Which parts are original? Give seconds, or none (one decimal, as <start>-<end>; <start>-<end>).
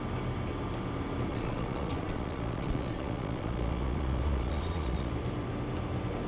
0.0-1.3; 5.1-6.3